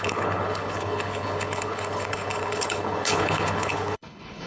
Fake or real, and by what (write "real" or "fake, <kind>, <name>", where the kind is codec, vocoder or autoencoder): fake, codec, HILCodec